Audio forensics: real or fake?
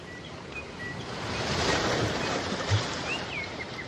fake